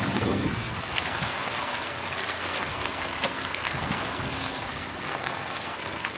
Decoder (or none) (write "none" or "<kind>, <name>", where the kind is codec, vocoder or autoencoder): codec, SNAC